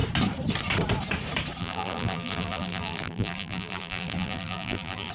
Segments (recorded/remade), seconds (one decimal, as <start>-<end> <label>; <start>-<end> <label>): 0.0-1.6 recorded; 1.6-5.1 remade